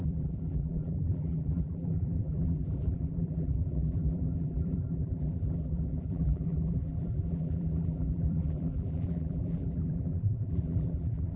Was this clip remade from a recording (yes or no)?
yes